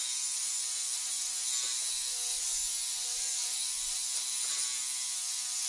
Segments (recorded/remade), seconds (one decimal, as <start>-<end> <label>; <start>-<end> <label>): 0.0-5.7 recorded

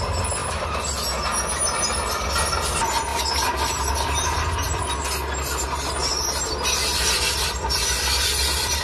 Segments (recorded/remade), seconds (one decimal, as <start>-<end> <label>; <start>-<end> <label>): 0.0-8.8 recorded

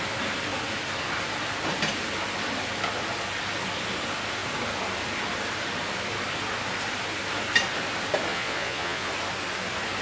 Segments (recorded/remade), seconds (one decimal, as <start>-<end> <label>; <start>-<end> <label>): 0.0-8.3 recorded; 8.3-9.1 remade; 9.1-10.0 recorded

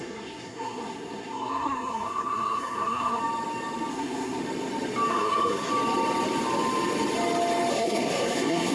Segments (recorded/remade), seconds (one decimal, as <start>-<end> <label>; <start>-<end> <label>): 0.0-3.2 remade; 3.2-3.9 recorded; 3.9-4.4 remade; 4.4-5.1 recorded; 5.1-5.7 remade; 5.7-7.7 recorded; 7.7-8.7 remade